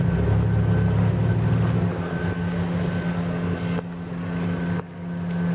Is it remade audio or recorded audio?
recorded